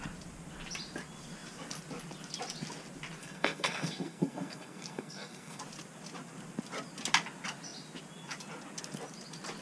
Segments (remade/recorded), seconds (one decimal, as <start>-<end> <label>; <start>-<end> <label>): 0.0-3.2 recorded; 3.2-5.6 remade; 5.6-9.6 recorded